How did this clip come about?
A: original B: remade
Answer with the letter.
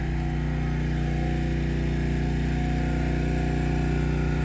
A